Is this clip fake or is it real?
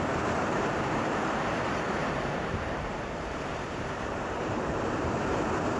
fake